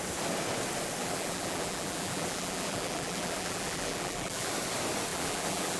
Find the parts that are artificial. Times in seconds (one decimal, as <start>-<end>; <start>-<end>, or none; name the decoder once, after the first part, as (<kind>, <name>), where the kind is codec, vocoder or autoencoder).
1.0-4.5 (vocoder, BigVGAN v2); 5.1-5.8